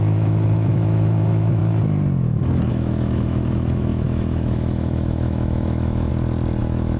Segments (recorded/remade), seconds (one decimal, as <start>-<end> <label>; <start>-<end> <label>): 0.0-1.6 remade; 1.6-2.7 recorded; 2.7-6.1 remade; 6.1-6.6 recorded; 6.6-7.0 remade